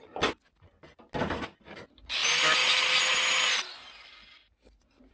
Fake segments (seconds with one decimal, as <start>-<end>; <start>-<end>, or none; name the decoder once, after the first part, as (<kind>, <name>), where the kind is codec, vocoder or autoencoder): none